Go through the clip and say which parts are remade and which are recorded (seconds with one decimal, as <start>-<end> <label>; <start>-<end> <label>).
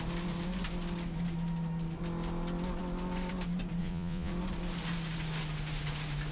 0.0-3.8 recorded; 3.8-4.3 remade; 4.3-6.3 recorded